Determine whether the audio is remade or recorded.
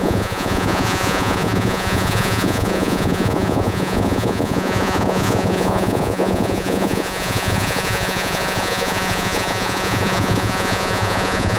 remade